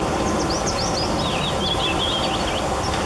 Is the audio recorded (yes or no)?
yes